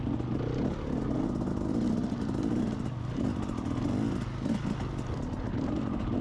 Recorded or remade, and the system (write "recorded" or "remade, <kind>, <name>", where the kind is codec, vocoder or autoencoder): recorded